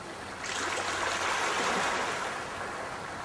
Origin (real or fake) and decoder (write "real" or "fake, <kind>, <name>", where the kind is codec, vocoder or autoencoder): real